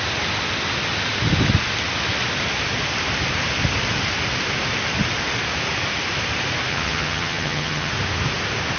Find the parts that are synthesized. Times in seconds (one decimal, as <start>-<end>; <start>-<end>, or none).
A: 6.7-7.9